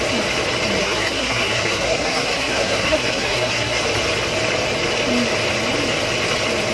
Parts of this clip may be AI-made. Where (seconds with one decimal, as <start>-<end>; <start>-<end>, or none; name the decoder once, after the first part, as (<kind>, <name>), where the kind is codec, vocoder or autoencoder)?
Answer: 0.8-3.8 (codec, SNAC)